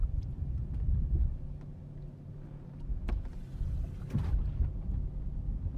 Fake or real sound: real